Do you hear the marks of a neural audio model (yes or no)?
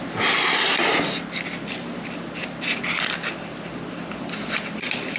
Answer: no